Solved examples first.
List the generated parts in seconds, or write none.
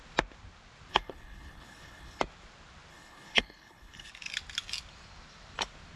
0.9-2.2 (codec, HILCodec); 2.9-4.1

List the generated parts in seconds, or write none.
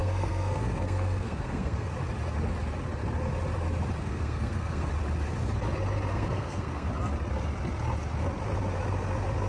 0.0-1.9 (codec, SNAC); 4.0-4.9; 6.1-6.9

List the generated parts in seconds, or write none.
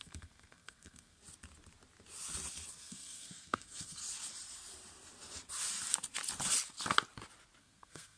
0.0-1.2 (codec, SNAC); 2.7-4.0; 7.6-8.2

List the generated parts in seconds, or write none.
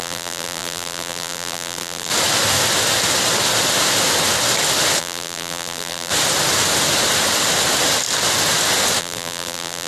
0.0-2.1 (vocoder, BigVGAN v2); 5.0-6.1; 9.0-9.9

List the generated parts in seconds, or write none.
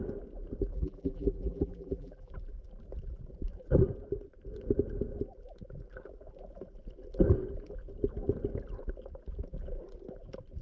0.7-2.3 (vocoder, BigVGAN v2)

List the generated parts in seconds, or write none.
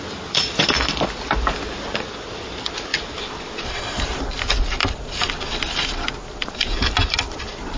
none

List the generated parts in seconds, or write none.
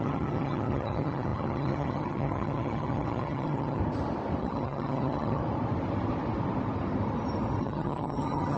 0.0-3.8 (vocoder, HiFi-GAN); 4.4-5.4; 7.6-8.6